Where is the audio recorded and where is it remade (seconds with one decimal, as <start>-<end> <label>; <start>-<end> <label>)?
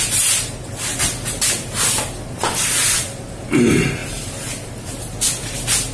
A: 0.0-5.9 recorded